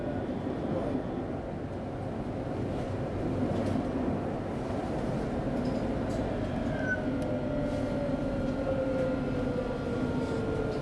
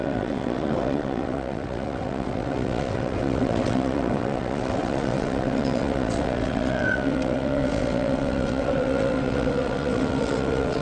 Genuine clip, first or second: first